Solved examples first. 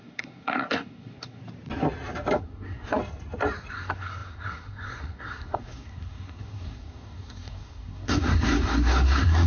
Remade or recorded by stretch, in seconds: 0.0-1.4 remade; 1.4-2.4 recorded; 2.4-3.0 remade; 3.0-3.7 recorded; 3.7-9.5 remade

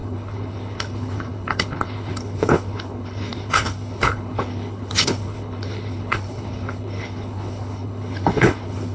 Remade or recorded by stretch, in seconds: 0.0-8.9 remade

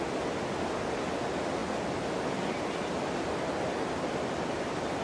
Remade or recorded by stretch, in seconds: 0.0-5.0 recorded

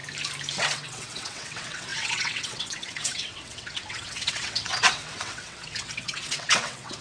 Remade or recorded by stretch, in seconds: 0.0-0.6 recorded; 0.6-7.0 remade